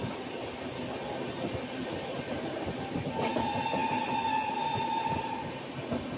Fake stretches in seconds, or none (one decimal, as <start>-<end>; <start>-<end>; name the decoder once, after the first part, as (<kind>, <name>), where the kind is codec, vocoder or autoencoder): 3.8-4.5 (vocoder, BigVGAN v2)